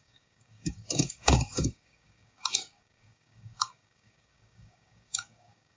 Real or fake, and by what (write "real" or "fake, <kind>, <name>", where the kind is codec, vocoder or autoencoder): fake, codec, DAC